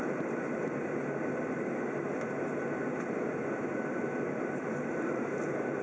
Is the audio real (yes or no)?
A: yes